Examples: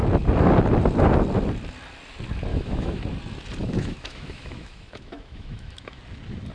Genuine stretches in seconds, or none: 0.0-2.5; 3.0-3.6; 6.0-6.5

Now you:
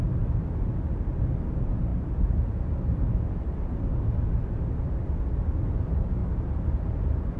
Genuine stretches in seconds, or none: 0.0-7.4

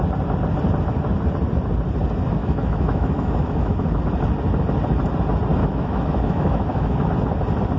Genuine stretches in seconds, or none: 0.0-2.4; 4.0-5.6; 7.1-7.8

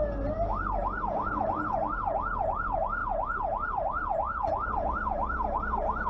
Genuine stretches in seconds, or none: 0.0-6.1

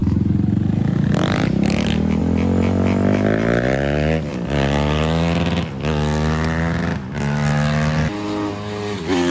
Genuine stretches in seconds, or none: 0.0-9.3

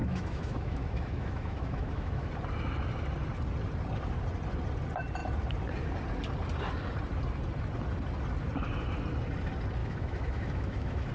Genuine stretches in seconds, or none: 2.3-9.8